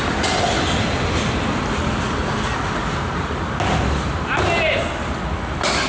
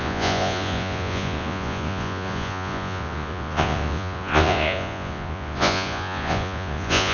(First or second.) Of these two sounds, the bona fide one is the first